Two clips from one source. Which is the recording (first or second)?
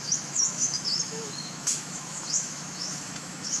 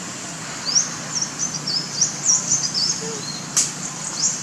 second